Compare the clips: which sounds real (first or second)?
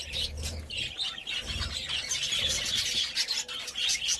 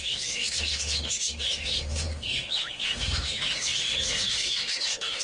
first